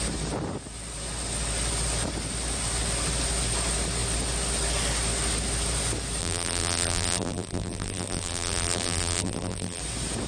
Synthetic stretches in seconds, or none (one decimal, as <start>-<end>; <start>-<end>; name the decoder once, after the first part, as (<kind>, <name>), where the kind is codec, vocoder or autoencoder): 6.2-9.8 (vocoder, BigVGAN v2)